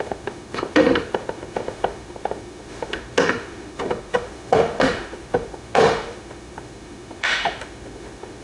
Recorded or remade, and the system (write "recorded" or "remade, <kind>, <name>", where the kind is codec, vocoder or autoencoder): remade, autoencoder, DAC-VAE